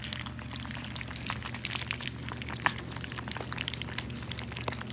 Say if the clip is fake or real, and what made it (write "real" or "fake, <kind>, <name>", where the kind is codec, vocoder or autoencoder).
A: real